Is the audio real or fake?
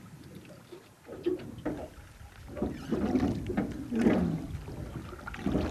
real